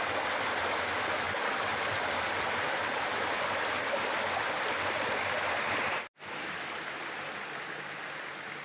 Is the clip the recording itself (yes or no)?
yes